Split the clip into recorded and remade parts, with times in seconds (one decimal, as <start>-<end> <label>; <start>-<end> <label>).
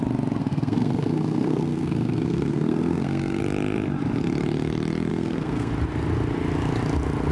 0.0-0.4 recorded; 0.4-3.4 remade; 3.4-5.1 recorded; 5.1-5.7 remade; 5.7-7.3 recorded